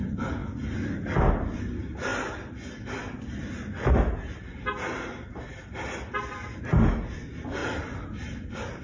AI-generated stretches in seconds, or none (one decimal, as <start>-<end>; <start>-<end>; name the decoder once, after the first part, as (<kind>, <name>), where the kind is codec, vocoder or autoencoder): none